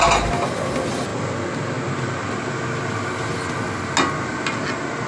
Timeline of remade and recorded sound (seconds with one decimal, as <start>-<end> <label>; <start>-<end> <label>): 0.0-5.1 recorded